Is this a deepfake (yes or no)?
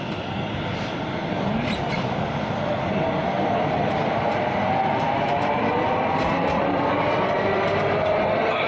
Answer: yes